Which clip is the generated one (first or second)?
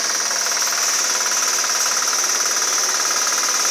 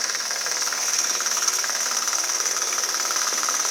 second